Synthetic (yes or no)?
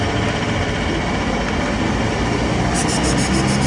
no